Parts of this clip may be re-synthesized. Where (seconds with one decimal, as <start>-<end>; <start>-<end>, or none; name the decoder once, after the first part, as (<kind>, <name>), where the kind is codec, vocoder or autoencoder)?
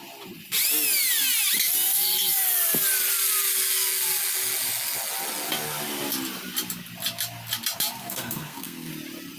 8.0-8.9 (codec, SNAC)